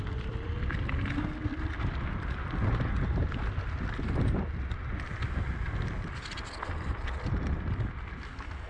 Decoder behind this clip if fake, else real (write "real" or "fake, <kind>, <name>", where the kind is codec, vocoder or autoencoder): real